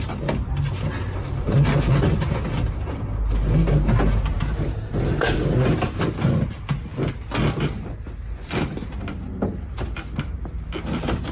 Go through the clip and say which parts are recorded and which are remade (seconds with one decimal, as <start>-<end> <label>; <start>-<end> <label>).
0.0-4.3 recorded; 4.3-6.0 remade; 6.0-11.3 recorded